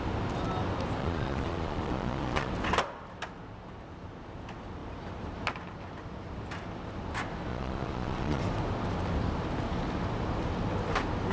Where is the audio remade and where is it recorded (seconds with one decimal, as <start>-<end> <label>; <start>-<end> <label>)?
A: 0.0-1.0 recorded; 1.0-2.5 remade; 2.5-7.5 recorded; 7.5-8.4 remade; 8.4-11.3 recorded